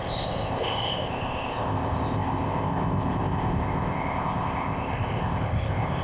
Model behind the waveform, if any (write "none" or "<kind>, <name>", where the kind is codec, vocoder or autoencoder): codec, ZipCodec